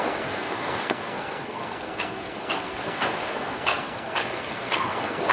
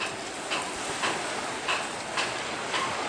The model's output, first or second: first